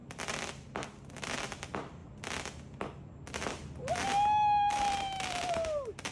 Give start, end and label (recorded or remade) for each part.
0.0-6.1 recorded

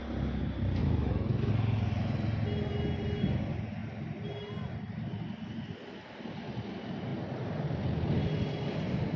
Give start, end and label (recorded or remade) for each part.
0.0-0.8 recorded; 0.8-1.5 remade; 1.5-9.2 recorded

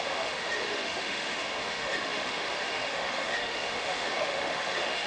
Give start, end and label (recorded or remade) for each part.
0.0-5.1 remade

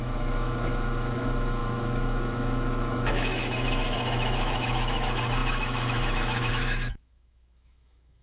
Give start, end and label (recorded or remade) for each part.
0.0-8.2 remade

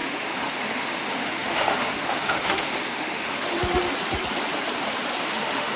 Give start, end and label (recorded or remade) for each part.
0.0-3.5 remade; 3.5-5.2 recorded; 5.2-5.8 remade

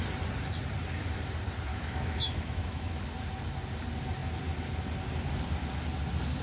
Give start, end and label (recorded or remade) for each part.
0.0-1.7 recorded; 1.7-3.0 remade; 3.0-6.4 recorded

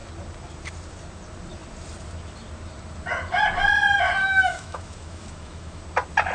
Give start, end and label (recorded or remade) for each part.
0.0-4.2 recorded; 4.2-5.8 remade; 5.8-6.3 recorded